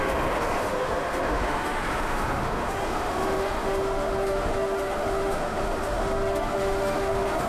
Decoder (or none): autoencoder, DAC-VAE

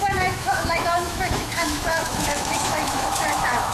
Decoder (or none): autoencoder, DAC-VAE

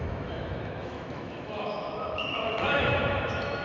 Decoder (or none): autoencoder, DAC-VAE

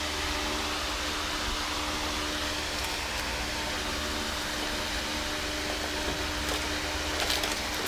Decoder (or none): none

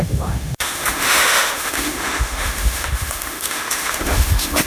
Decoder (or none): autoencoder, DAC-VAE